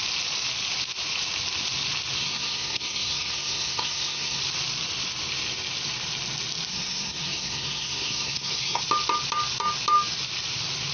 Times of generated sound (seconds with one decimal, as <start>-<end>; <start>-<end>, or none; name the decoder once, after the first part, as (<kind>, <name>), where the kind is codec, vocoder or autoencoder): 2.2-4.4 (codec, SNAC); 6.7-8.8